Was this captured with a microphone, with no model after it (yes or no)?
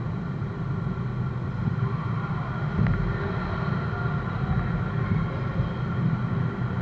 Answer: yes